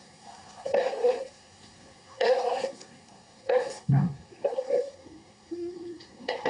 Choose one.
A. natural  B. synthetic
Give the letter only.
B